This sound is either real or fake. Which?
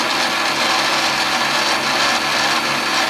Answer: real